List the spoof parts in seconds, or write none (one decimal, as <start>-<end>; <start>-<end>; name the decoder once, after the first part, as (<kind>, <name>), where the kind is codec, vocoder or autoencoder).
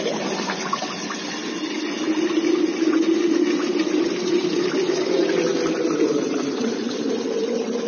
none